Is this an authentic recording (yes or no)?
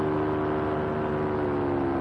yes